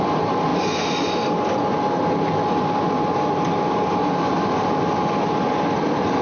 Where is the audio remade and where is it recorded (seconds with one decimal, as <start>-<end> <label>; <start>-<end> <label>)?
0.0-6.2 recorded